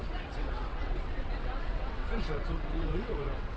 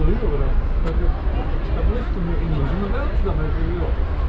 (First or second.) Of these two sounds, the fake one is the first